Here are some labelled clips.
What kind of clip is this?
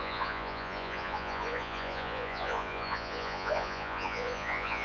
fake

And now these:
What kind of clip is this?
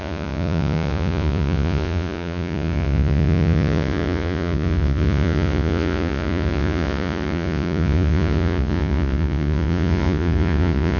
fake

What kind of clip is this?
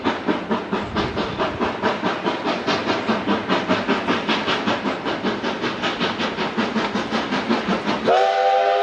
real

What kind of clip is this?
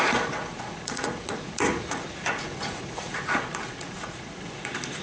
fake